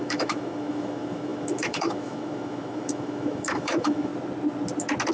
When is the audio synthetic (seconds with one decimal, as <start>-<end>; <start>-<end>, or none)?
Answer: 0.0-4.1